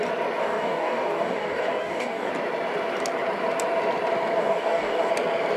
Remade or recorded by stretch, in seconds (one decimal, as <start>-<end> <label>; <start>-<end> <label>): 0.0-0.4 recorded; 0.4-2.3 remade; 2.3-4.4 recorded; 4.4-5.1 remade; 5.1-5.6 recorded